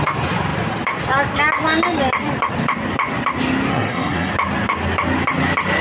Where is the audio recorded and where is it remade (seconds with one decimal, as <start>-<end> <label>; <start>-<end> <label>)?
0.0-3.7 recorded; 3.7-4.3 remade; 4.3-5.8 recorded